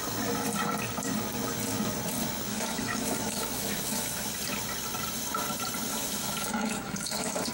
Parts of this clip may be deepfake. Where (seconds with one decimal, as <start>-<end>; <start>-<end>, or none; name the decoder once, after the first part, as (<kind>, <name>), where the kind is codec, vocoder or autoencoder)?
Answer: 2.5-4.3 (autoencoder, DAC-VAE); 5.9-7.5